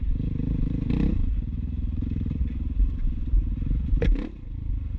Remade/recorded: remade